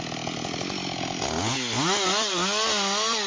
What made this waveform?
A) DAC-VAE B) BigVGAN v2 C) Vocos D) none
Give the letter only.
D